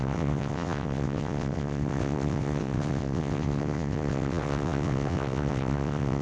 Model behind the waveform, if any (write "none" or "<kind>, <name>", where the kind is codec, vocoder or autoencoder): vocoder, WaveNeXt